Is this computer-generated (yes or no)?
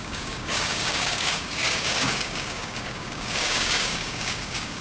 yes